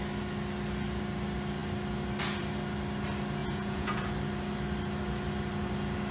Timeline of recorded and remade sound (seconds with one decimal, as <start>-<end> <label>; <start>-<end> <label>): 0.0-3.4 recorded; 3.4-4.1 remade; 4.1-6.1 recorded